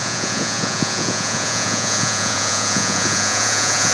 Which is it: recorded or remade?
remade